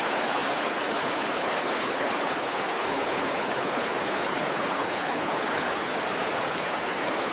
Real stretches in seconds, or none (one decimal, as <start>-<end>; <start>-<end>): 5.9-6.5